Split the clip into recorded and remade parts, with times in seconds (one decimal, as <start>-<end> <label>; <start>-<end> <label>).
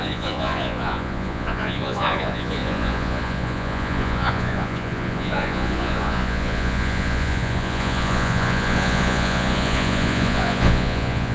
0.0-11.3 remade